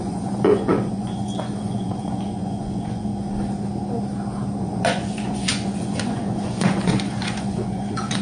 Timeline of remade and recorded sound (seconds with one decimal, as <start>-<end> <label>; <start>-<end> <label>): 0.0-3.1 remade; 3.1-4.6 recorded; 4.6-8.2 remade